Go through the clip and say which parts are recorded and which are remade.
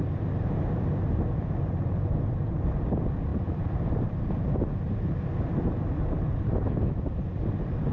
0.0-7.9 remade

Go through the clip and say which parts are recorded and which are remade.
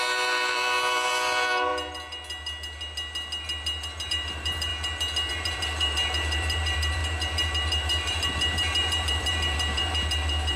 0.0-1.7 remade; 1.7-4.1 recorded; 4.1-4.7 remade; 4.7-5.3 recorded; 5.3-10.6 remade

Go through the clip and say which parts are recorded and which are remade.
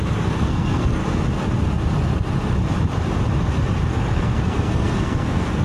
0.0-1.0 remade; 1.0-3.9 recorded; 3.9-5.6 remade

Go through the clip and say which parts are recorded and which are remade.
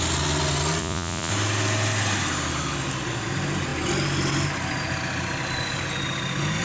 0.0-0.8 recorded; 0.8-1.3 remade; 1.3-6.6 recorded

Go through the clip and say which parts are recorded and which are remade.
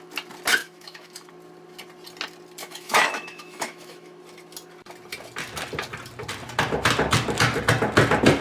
0.0-0.6 recorded; 0.6-1.3 remade; 1.3-2.6 recorded; 2.6-4.2 remade; 4.2-8.4 recorded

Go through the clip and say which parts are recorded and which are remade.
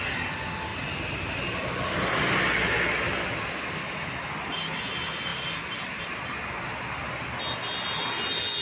0.0-3.8 recorded; 3.8-4.3 remade; 4.3-8.6 recorded